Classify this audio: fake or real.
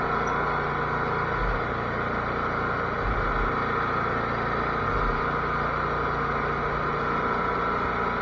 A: real